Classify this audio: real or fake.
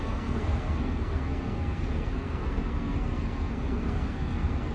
fake